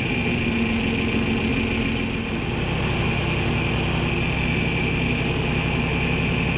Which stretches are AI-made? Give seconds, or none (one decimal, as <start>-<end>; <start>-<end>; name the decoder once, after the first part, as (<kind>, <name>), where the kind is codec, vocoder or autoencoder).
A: none